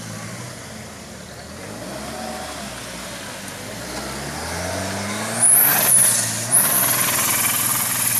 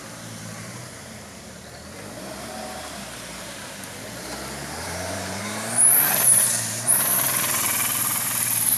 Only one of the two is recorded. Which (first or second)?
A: first